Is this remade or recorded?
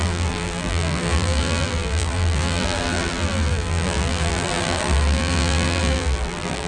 remade